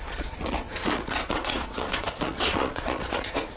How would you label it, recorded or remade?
remade